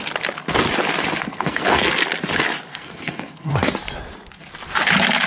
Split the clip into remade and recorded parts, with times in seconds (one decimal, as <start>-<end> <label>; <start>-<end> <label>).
0.0-1.2 recorded; 1.2-1.9 remade; 1.9-2.7 recorded; 2.7-3.5 remade; 3.5-5.3 recorded